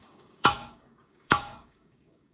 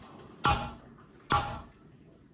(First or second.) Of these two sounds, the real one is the second